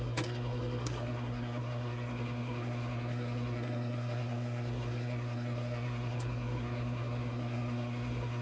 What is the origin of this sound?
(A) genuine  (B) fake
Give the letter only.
B